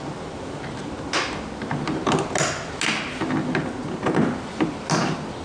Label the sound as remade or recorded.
recorded